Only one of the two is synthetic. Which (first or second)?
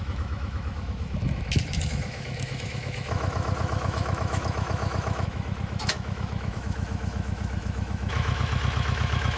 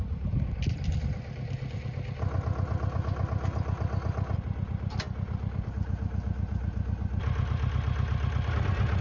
first